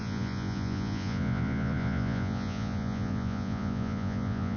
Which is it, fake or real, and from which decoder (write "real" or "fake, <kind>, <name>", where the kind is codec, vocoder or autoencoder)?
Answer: fake, vocoder, Vocos